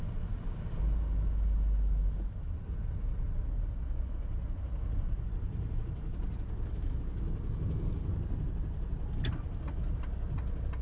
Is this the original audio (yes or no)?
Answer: yes